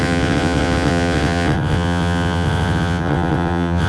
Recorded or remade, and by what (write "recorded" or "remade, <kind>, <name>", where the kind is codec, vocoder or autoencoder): remade, vocoder, WaveNeXt